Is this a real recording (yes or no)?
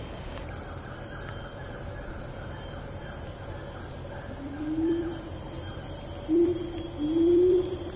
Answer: no